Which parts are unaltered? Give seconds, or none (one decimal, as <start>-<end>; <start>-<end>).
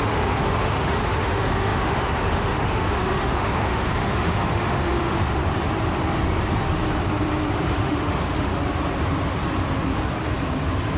5.4-7.7; 8.5-11.0